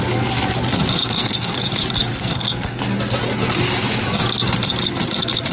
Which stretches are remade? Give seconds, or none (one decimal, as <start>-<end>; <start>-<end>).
1.0-1.7; 2.1-2.8